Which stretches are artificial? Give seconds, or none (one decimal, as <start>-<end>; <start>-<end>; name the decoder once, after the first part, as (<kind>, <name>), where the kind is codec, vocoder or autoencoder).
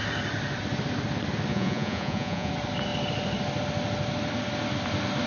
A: 1.5-2.5 (vocoder, Vocos)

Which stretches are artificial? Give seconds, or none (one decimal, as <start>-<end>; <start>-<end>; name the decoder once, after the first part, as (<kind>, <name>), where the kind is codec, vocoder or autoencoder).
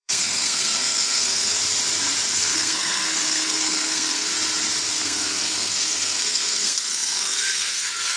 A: 0.0-1.6 (codec, SNAC); 2.3-4.3; 4.9-8.2